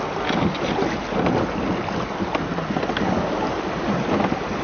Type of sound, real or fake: real